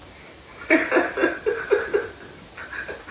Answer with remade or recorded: recorded